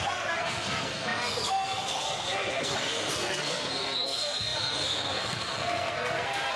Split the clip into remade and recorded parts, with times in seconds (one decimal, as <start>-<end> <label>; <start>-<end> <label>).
0.0-6.6 remade

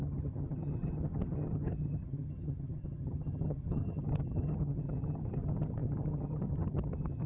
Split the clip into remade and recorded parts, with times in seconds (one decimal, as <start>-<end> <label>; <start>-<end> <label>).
0.0-7.3 remade